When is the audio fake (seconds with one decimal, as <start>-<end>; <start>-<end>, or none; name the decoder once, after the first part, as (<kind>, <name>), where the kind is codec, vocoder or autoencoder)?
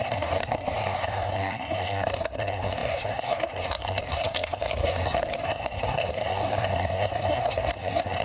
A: 0.0-8.2 (codec, SNAC)